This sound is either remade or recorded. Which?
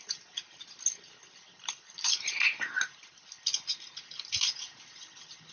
recorded